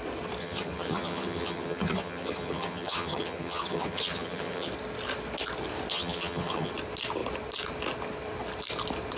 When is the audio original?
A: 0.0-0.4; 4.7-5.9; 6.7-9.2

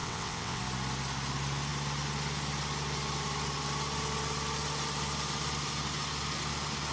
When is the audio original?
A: 0.6-6.9

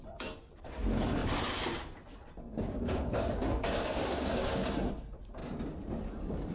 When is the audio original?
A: 0.0-2.5; 4.7-6.5